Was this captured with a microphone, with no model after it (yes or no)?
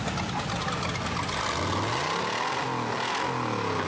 yes